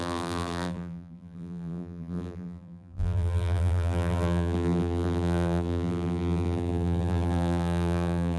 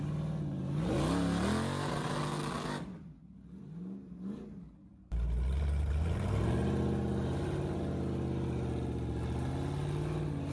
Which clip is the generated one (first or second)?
first